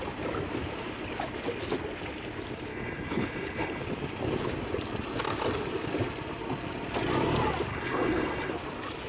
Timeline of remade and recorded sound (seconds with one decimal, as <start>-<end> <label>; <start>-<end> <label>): 0.0-2.7 recorded; 2.7-3.8 remade; 3.8-7.7 recorded; 7.7-8.5 remade; 8.5-9.1 recorded